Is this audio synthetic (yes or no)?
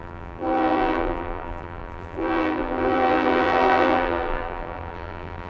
yes